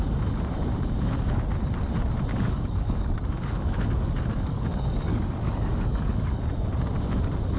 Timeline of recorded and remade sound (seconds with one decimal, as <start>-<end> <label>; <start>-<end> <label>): 0.0-2.3 recorded; 2.3-6.4 remade; 6.4-7.6 recorded